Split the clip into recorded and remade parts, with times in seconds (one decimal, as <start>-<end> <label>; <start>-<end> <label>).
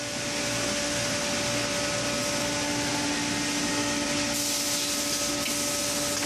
0.0-6.3 recorded